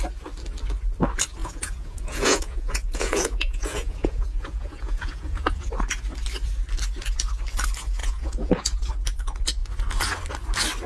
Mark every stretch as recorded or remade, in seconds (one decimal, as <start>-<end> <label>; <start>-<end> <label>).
0.0-1.4 recorded; 1.4-5.7 remade; 5.7-8.0 recorded; 8.0-8.9 remade; 8.9-10.9 recorded